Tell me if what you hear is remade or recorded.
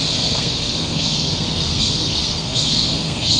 remade